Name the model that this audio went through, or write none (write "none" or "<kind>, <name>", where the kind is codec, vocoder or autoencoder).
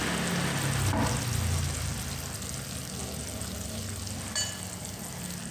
none